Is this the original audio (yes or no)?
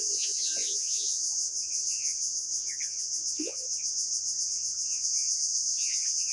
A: no